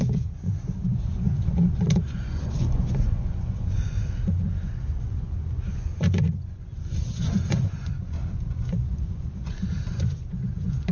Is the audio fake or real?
fake